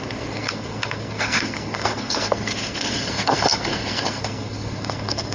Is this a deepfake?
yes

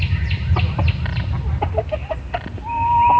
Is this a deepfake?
no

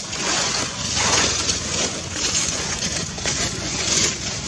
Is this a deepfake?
yes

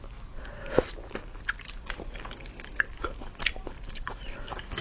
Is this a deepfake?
no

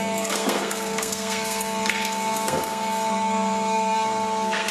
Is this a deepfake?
yes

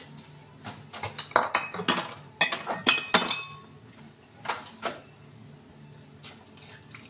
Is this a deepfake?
no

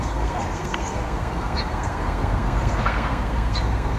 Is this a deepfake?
yes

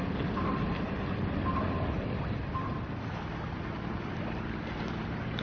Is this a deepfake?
no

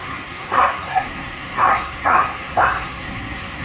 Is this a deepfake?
yes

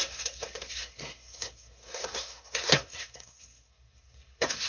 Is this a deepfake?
yes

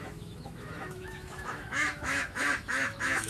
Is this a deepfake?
yes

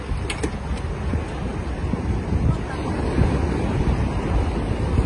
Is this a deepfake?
no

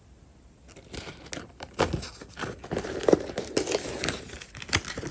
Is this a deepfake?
no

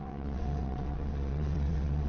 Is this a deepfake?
yes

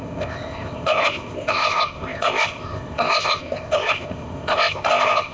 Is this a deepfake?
yes